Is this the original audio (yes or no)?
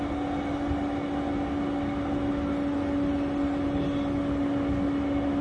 yes